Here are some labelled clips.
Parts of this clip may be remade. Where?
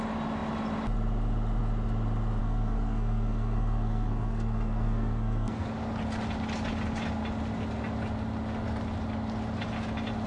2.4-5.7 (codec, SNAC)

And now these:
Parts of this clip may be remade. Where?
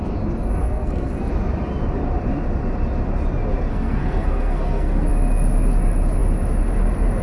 0.6-1.3 (codec, SNAC); 3.7-5.1